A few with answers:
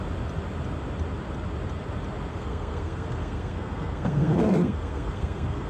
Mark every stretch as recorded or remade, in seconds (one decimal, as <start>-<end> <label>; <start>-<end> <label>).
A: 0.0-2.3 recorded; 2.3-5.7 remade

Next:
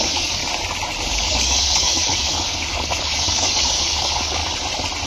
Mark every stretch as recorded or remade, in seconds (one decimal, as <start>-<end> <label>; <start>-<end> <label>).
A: 0.0-0.4 remade; 0.4-1.1 recorded; 1.1-4.4 remade; 4.4-5.1 recorded

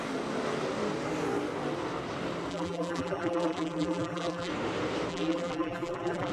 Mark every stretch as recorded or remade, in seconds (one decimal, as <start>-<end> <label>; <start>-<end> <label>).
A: 0.0-2.5 recorded; 2.5-4.5 remade; 4.5-5.1 recorded; 5.1-6.3 remade

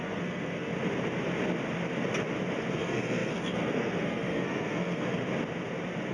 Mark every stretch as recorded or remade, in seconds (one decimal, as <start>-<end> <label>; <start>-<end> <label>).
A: 0.0-0.7 remade; 0.7-2.7 recorded; 2.7-5.2 remade; 5.2-6.1 recorded